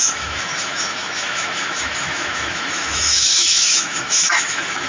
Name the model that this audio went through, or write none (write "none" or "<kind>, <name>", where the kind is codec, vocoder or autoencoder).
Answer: autoencoder, DAC-VAE